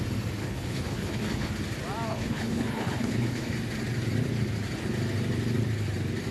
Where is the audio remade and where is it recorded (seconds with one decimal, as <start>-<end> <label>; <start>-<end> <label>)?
0.0-0.4 recorded; 0.4-1.5 remade; 1.5-2.1 recorded; 2.1-3.6 remade; 3.6-6.3 recorded